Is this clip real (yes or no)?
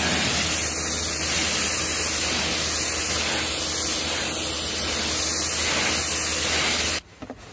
yes